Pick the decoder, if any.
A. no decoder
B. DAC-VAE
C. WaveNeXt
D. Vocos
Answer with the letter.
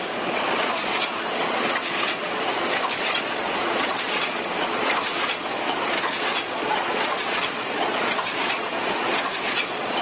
D